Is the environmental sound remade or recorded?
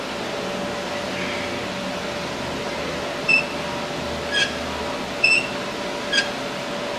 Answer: recorded